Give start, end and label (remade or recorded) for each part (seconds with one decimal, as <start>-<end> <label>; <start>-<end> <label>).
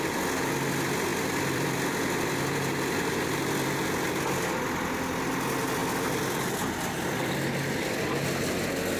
0.0-1.1 recorded; 1.1-4.2 remade; 4.2-5.8 recorded; 5.8-7.4 remade; 7.4-9.0 recorded